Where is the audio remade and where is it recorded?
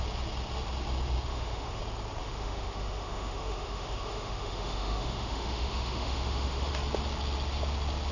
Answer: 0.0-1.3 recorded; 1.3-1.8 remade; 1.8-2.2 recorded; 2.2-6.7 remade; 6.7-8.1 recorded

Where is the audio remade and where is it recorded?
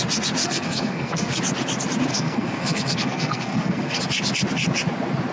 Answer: 0.0-0.4 recorded; 0.4-1.4 remade; 1.4-2.1 recorded; 2.1-4.0 remade; 4.0-5.3 recorded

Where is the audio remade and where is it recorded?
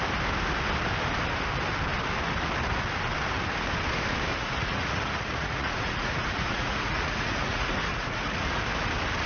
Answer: 0.0-4.3 recorded; 4.3-8.6 remade; 8.6-9.3 recorded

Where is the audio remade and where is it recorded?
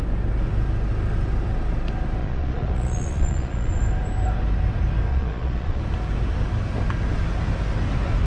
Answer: 0.0-2.2 recorded; 2.2-3.8 remade; 3.8-5.1 recorded; 5.1-5.8 remade; 5.8-8.3 recorded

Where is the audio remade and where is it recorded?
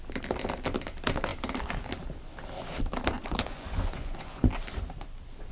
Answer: 0.0-3.2 recorded; 3.2-4.5 remade; 4.5-5.5 recorded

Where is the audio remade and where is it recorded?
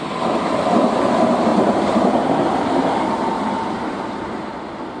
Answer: 0.0-1.5 recorded; 1.5-4.5 remade; 4.5-5.0 recorded